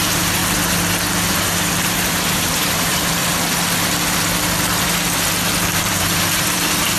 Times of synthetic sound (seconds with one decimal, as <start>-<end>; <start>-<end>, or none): 0.0-0.4; 1.3-3.2; 5.8-7.0